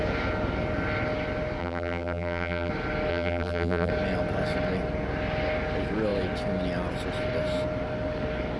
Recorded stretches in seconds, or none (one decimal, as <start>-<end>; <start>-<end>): 0.0-1.6; 2.7-3.1; 3.9-8.6